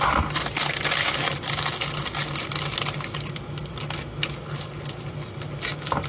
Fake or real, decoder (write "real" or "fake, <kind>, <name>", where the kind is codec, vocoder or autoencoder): real